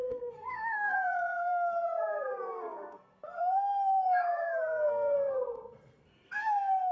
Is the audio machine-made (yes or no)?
yes